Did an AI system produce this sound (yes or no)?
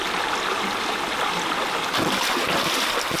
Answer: no